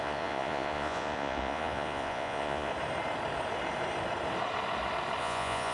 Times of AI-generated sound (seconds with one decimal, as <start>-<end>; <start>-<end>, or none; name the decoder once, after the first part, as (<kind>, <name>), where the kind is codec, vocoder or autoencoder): 0.0-2.7 (vocoder, Vocos); 5.2-5.7